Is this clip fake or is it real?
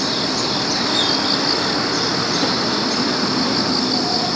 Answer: real